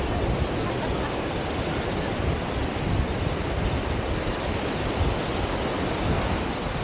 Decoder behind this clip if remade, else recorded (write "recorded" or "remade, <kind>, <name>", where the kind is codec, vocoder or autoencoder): recorded